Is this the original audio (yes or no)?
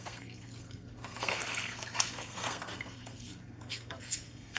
no